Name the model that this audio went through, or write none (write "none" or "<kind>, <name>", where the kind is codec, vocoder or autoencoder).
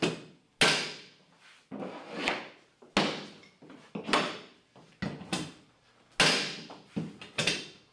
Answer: none